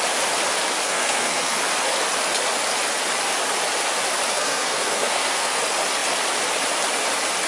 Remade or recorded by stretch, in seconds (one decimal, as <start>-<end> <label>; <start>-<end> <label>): 0.0-0.8 recorded; 0.8-1.6 remade; 1.6-4.3 recorded; 4.3-5.6 remade; 5.6-7.5 recorded